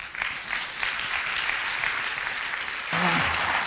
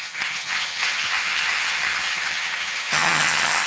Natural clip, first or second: first